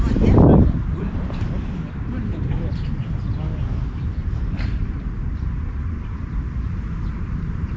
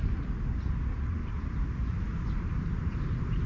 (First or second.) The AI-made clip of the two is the first